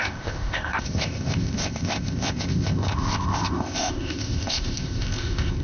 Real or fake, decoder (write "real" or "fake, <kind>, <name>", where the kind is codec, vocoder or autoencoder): fake, codec, ZipCodec